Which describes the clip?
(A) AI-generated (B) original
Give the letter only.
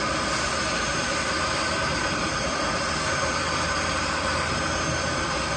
B